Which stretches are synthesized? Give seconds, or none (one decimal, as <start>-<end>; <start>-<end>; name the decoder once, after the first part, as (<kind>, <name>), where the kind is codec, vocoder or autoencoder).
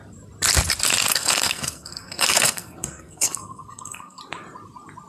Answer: 1.1-4.2 (codec, SNAC)